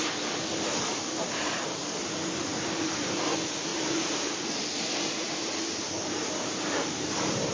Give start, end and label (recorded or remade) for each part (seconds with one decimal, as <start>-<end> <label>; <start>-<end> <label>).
0.0-0.9 recorded; 0.9-1.7 remade; 1.7-2.5 recorded; 2.5-3.1 remade; 3.1-3.7 recorded; 3.7-4.4 remade; 4.4-5.2 recorded; 5.2-7.5 remade